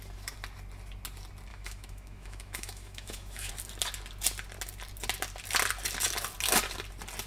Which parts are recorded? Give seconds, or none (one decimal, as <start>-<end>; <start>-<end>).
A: 0.0-1.5; 3.5-7.3

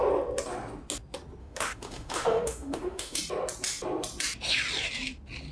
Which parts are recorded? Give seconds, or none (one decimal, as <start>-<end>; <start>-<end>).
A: 0.0-1.4; 3.2-5.5

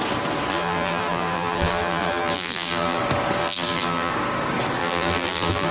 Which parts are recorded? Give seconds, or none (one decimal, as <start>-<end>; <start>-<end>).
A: 0.0-0.5; 3.0-3.4; 4.1-4.8

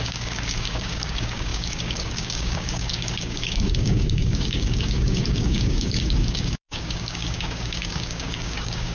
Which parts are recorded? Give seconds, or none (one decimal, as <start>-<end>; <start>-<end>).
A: none

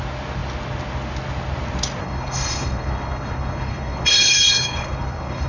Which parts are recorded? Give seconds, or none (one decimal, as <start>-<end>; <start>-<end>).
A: 0.0-2.0